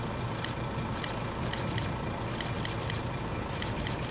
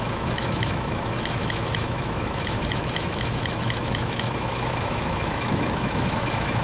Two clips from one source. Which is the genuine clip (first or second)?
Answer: first